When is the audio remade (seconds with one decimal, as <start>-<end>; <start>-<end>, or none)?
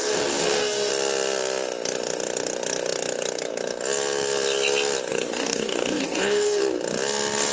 0.0-0.9; 5.1-6.6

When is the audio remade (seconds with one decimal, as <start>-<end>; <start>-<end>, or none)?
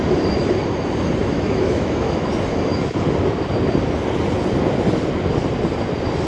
1.2-2.3